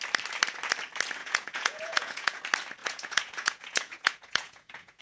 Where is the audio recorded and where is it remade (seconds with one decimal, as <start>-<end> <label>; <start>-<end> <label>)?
0.0-1.2 recorded; 1.2-2.4 remade; 2.4-2.8 recorded; 2.8-5.0 remade